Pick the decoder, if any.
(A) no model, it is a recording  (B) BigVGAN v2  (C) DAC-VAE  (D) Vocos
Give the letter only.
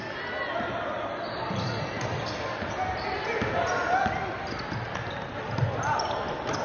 A